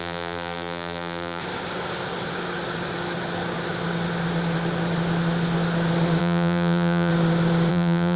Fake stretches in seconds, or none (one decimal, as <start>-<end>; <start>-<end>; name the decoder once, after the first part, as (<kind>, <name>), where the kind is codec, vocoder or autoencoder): 0.0-1.4 (vocoder, BigVGAN v2); 6.2-7.1; 7.7-8.2